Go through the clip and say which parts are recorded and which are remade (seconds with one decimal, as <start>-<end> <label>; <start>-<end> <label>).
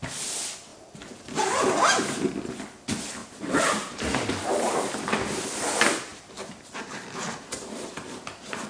0.0-3.2 recorded; 3.2-4.9 remade; 4.9-6.1 recorded; 6.1-8.7 remade